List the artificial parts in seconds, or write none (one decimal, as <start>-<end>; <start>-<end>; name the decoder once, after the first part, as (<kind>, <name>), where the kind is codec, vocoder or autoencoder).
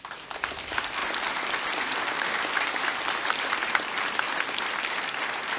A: none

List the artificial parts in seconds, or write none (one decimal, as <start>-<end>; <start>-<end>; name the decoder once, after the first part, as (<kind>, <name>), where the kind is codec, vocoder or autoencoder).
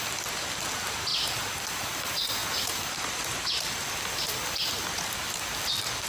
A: none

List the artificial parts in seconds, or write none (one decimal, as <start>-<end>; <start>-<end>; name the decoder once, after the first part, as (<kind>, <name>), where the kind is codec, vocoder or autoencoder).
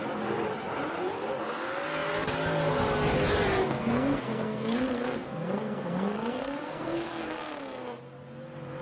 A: 3.7-8.0 (codec, SNAC)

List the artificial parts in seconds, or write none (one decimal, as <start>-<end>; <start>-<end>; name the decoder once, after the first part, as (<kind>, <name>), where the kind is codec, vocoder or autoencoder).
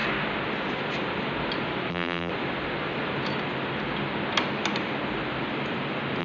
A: 1.9-2.3 (vocoder, BigVGAN v2)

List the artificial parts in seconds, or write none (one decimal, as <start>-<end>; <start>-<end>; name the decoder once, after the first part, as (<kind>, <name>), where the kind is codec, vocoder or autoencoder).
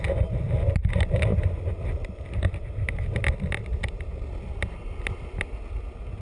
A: none